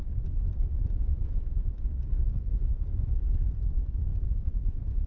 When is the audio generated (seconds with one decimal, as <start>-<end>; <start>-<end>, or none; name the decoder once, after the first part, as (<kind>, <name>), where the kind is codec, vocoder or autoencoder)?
1.2-1.8 (vocoder, Vocos); 2.5-3.1; 4.1-5.1